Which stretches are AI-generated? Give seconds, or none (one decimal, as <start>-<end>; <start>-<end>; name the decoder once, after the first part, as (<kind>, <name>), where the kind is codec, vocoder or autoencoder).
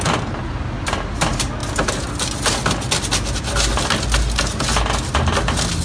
none